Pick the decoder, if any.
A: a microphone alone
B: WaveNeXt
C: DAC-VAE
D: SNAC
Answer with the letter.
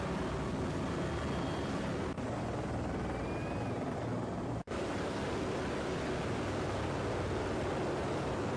A